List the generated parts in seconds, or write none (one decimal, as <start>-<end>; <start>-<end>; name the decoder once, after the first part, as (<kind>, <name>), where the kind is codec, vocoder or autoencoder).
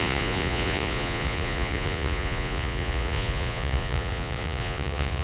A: 0.0-5.2 (vocoder, Vocos)